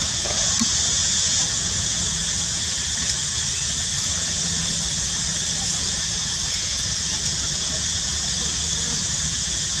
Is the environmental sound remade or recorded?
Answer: remade